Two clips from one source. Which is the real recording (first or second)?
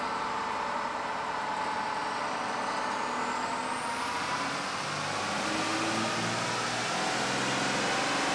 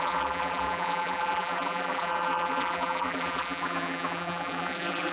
first